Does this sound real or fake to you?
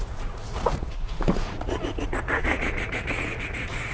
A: fake